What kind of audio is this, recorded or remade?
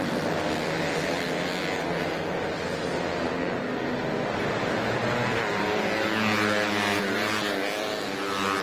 recorded